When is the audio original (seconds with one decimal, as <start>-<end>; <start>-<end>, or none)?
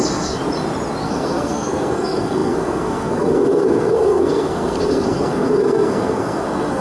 0.4-1.0